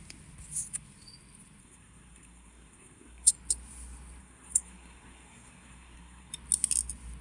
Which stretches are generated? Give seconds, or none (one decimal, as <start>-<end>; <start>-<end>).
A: 1.6-3.3; 4.2-6.3